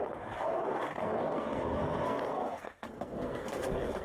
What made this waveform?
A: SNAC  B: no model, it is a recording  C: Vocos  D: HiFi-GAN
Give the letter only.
A